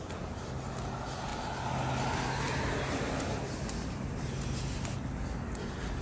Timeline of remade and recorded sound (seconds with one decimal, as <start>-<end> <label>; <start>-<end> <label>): 0.0-6.0 recorded